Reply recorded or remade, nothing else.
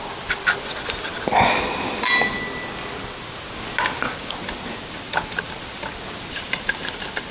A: recorded